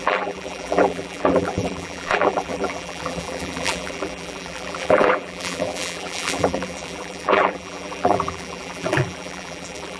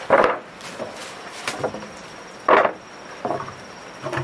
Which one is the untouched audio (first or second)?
second